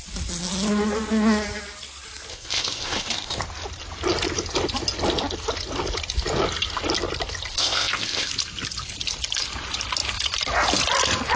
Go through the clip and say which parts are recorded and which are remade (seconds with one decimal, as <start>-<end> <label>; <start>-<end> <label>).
0.0-2.3 recorded; 2.3-3.4 remade; 3.4-7.5 recorded; 7.5-8.3 remade; 8.3-11.4 recorded